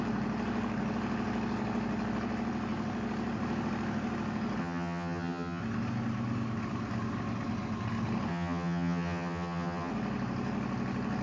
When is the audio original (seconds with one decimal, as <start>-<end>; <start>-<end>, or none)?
0.0-4.6; 5.6-8.3; 9.9-11.2